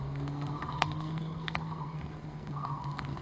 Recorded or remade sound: remade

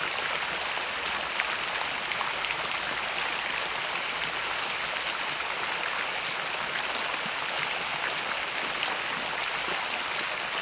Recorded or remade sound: recorded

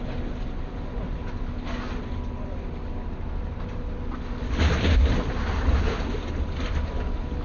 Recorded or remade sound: recorded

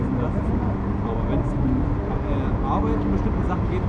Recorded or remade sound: recorded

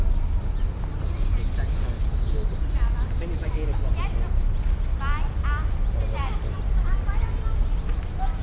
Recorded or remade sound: recorded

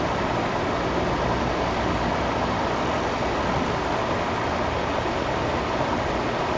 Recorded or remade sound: recorded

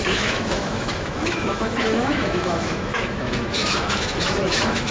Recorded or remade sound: remade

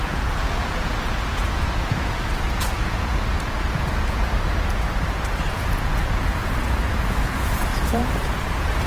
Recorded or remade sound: remade